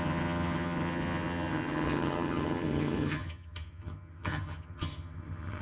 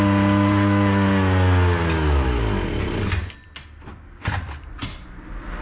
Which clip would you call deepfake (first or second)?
first